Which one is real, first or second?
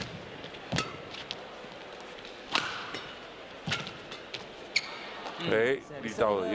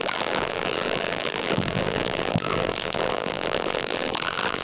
first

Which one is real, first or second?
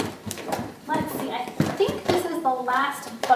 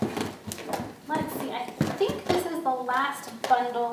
second